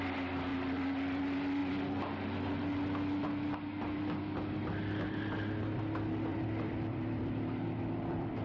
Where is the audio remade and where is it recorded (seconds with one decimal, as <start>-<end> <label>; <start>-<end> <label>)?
0.0-0.5 recorded; 0.5-1.2 remade; 1.2-6.3 recorded; 6.3-8.4 remade